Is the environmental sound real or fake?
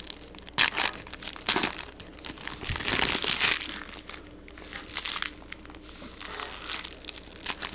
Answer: real